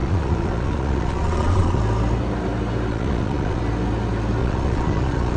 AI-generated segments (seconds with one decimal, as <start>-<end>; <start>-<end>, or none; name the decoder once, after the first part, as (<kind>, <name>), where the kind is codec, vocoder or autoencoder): 0.0-1.8 (vocoder, Vocos); 2.9-3.6; 4.4-5.4